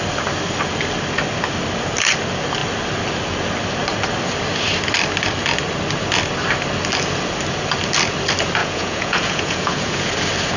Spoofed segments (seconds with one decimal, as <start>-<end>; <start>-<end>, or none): 8.6-10.1